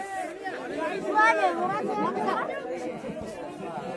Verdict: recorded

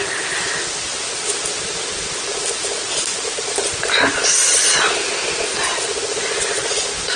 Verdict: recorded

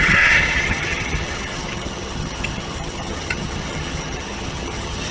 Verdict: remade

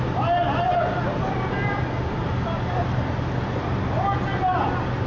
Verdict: recorded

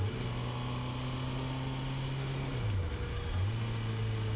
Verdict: recorded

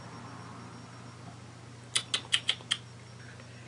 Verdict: recorded